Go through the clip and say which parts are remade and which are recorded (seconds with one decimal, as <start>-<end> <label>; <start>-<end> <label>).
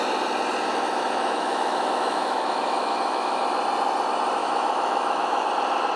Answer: 0.0-0.7 recorded; 0.7-3.4 remade; 3.4-4.4 recorded; 4.4-5.5 remade; 5.5-6.0 recorded